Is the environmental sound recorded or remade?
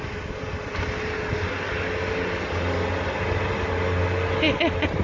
recorded